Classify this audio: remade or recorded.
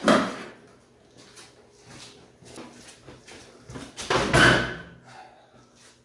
recorded